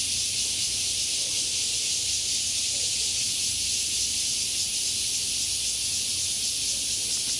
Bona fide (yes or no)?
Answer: yes